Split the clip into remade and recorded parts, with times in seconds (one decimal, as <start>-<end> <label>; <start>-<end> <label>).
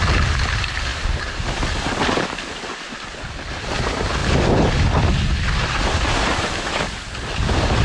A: 0.0-7.8 recorded